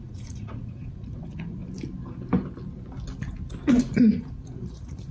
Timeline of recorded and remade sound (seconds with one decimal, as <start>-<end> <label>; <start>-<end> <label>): 0.0-1.6 remade; 1.6-3.8 recorded; 3.8-5.1 remade